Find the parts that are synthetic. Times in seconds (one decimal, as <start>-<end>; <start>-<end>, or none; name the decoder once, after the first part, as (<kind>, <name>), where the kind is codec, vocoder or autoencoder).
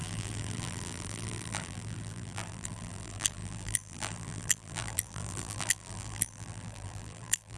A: 0.0-7.6 (vocoder, BigVGAN v2)